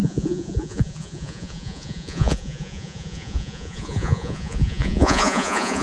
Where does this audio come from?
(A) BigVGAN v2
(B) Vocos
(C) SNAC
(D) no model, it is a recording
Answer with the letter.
B